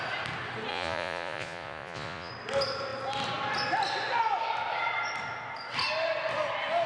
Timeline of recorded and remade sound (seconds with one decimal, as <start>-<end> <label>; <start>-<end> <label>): 0.0-0.7 recorded; 0.7-2.3 remade; 2.3-6.9 recorded